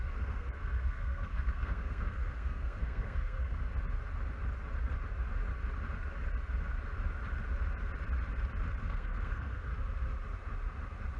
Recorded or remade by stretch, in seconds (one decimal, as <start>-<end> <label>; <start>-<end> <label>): 0.0-3.6 remade; 3.6-8.8 recorded; 8.8-9.7 remade; 9.7-11.2 recorded